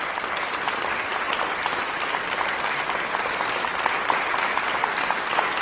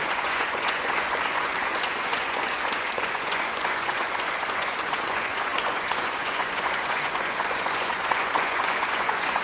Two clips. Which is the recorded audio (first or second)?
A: first